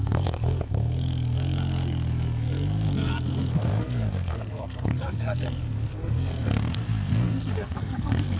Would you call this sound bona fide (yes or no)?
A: no